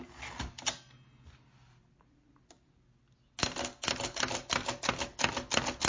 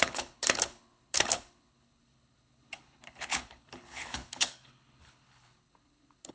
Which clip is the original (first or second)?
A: first